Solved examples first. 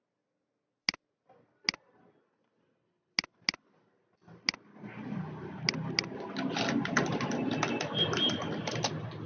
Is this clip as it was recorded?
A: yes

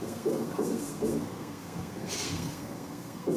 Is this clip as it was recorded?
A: no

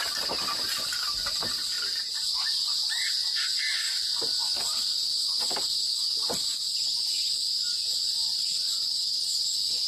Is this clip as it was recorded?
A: yes